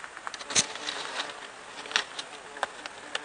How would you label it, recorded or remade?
recorded